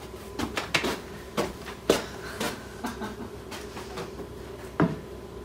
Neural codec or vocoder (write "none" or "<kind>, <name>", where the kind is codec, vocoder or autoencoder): none